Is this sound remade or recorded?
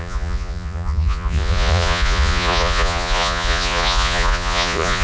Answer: remade